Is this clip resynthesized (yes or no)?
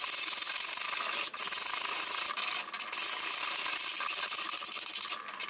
no